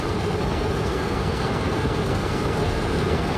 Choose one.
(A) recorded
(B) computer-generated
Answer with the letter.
B